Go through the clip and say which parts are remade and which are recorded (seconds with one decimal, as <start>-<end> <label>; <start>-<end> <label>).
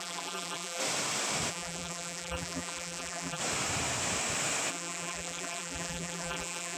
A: 0.0-0.8 remade; 0.8-1.5 recorded; 1.5-3.4 remade; 3.4-4.7 recorded; 4.7-6.8 remade